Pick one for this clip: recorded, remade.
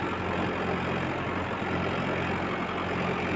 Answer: recorded